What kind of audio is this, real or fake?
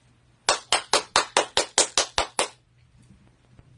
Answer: real